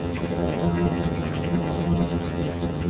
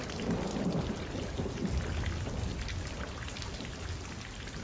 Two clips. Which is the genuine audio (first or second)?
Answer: second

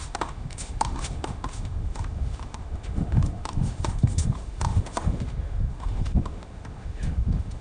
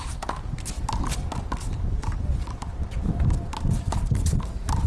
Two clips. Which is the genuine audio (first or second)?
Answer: second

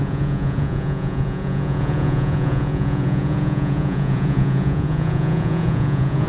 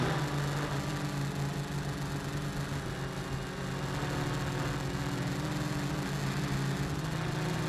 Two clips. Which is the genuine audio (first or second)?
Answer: second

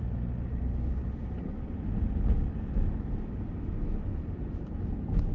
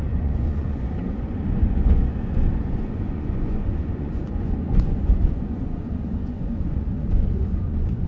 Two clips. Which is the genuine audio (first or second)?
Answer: first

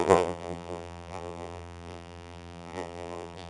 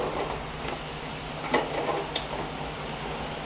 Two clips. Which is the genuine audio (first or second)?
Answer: second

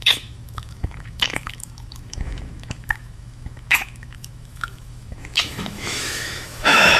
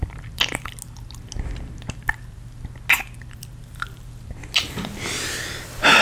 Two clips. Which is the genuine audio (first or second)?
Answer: second